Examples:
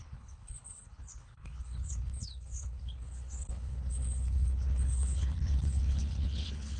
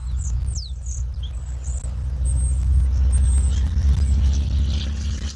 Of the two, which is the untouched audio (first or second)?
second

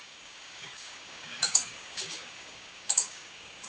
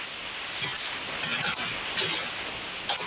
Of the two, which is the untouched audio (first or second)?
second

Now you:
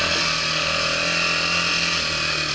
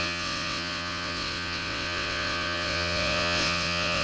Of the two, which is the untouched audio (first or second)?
first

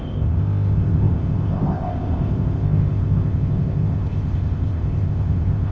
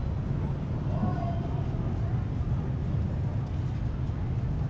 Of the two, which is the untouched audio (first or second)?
second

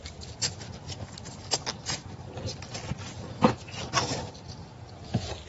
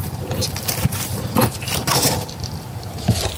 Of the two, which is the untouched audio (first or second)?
first